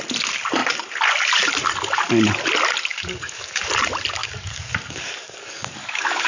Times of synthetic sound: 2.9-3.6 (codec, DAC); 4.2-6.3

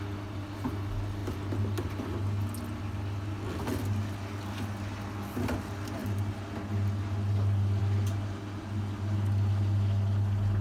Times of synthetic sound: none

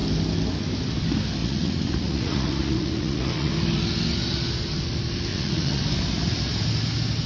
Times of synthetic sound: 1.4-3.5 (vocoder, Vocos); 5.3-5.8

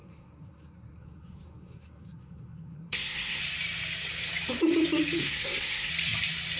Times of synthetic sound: 0.0-3.4 (codec, SNAC); 5.2-5.9

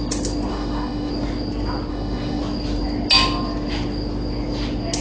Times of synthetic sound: 0.5-1.1 (autoencoder, DAC-VAE); 1.9-2.4

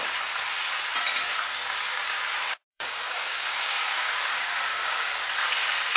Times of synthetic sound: 2.7-4.3 (codec, DAC); 4.7-5.2